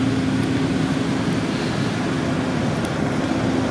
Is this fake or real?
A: real